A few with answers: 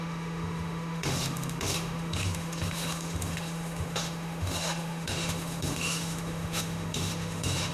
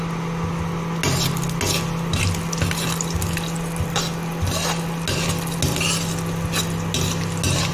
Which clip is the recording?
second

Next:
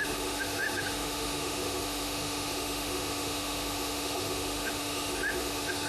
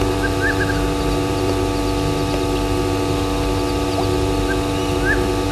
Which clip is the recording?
second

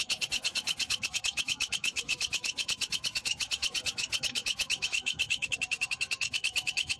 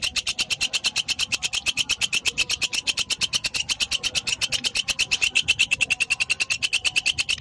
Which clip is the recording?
second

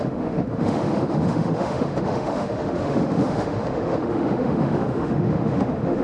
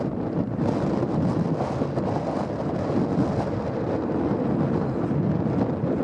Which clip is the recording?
second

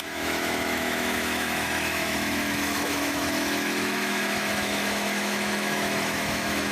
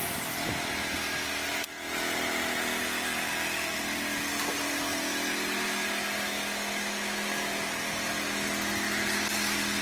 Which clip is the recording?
second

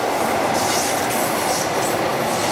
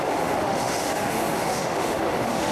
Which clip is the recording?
first